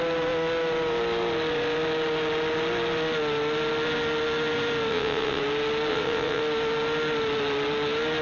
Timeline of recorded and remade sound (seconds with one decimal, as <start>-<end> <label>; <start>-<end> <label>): 0.0-4.9 recorded; 4.9-5.4 remade; 5.4-5.9 recorded; 5.9-6.4 remade; 6.4-8.2 recorded